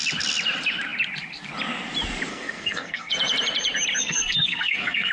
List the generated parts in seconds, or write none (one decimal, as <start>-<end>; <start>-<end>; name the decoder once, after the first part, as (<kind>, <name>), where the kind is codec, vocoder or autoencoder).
2.3-3.1 (codec, SNAC); 4.0-5.1